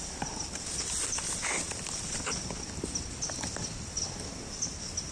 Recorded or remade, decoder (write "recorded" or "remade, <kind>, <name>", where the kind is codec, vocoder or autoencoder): recorded